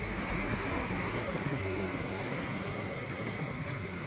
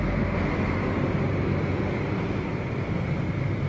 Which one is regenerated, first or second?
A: first